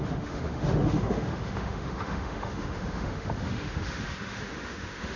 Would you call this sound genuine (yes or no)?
no